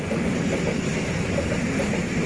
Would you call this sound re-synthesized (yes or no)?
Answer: no